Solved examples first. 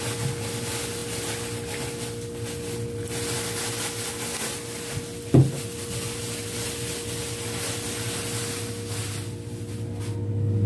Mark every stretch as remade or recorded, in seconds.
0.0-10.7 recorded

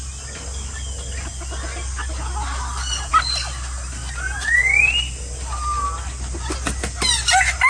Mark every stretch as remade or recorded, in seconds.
0.0-7.7 recorded

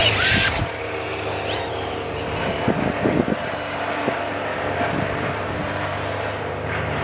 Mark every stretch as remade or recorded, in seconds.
0.0-7.0 remade

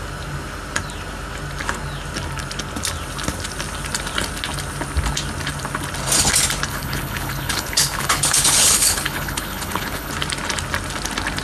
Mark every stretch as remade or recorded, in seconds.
0.0-6.7 recorded; 6.7-10.1 remade; 10.1-11.4 recorded

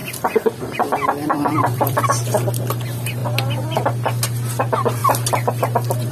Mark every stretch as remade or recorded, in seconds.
0.0-2.0 remade; 2.0-3.2 recorded; 3.2-3.8 remade; 3.8-6.1 recorded

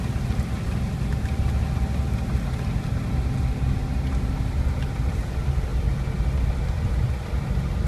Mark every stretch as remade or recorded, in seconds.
0.0-7.9 recorded

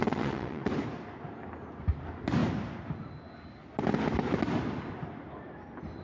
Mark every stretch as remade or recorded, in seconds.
0.0-0.7 remade; 0.7-6.0 recorded

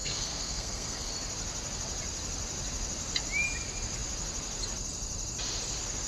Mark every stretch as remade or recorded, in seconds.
0.0-1.1 remade; 1.1-6.1 recorded